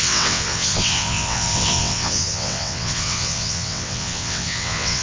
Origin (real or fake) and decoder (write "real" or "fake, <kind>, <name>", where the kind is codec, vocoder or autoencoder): fake, vocoder, WaveNeXt